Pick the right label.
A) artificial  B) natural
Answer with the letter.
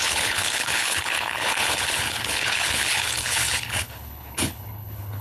A